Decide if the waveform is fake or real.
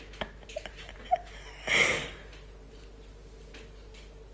real